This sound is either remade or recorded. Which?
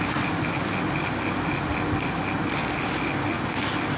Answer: recorded